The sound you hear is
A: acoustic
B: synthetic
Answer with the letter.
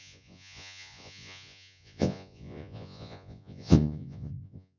B